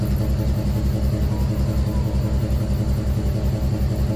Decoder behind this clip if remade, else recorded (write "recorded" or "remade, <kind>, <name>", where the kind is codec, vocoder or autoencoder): recorded